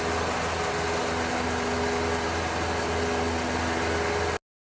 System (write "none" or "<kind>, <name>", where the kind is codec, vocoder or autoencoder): none